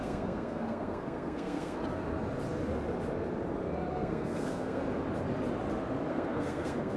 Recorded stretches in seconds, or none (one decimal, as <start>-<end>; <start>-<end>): 1.8-3.9; 4.8-6.1